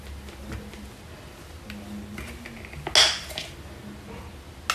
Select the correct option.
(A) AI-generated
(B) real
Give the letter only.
B